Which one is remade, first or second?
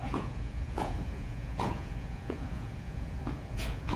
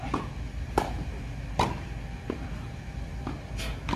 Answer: first